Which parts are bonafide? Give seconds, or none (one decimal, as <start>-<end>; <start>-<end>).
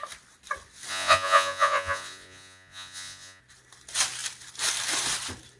0.0-0.9; 3.4-5.6